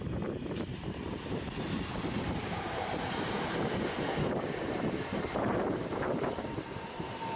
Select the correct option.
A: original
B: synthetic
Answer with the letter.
B